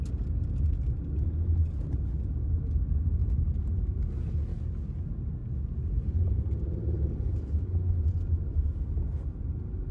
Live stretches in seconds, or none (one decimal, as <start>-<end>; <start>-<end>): 0.0-1.6; 2.6-3.2; 4.0-9.9